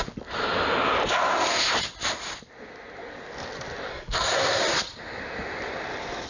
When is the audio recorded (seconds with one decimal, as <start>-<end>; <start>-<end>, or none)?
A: 0.0-3.9; 4.6-6.3